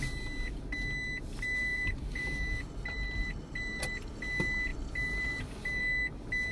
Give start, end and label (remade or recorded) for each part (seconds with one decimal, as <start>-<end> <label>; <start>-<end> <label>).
0.0-1.7 recorded; 1.7-3.8 remade; 3.8-4.7 recorded; 4.7-5.8 remade; 5.8-6.5 recorded